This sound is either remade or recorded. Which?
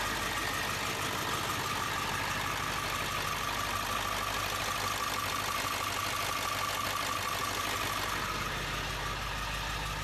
recorded